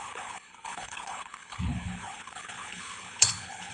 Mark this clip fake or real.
fake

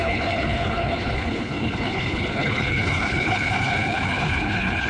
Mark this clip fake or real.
fake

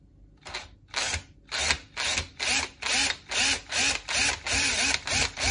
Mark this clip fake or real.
real